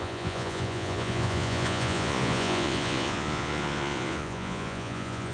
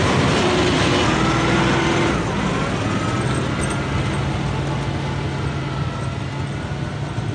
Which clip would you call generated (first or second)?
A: first